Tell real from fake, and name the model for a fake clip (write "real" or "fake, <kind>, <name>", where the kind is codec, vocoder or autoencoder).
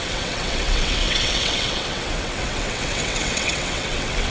fake, vocoder, WaveNeXt